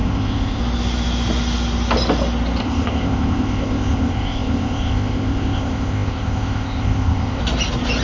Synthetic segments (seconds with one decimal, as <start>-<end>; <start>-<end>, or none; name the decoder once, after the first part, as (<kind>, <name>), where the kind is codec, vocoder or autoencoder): 0.0-0.6 (codec, ZipCodec); 2.6-7.4

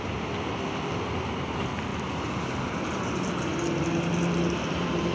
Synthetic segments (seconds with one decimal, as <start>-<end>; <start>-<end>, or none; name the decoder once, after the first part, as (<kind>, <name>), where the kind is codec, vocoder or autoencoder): none

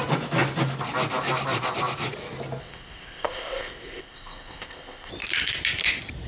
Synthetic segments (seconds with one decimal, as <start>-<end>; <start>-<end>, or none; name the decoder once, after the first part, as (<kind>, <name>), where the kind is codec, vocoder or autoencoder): 2.6-5.1 (codec, ZipCodec)

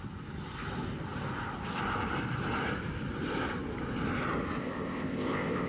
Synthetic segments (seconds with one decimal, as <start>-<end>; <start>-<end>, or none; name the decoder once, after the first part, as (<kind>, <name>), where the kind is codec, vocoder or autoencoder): 4.6-5.7 (codec, ZipCodec)

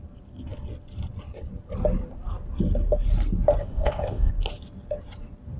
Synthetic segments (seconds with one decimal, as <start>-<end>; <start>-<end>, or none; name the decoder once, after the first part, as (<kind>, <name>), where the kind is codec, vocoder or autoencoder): 3.6-4.3 (codec, ZipCodec)

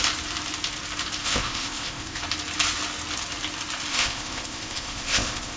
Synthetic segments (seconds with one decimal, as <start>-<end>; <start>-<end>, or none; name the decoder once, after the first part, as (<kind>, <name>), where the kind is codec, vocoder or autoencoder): 1.2-2.2 (codec, ZipCodec); 3.9-5.6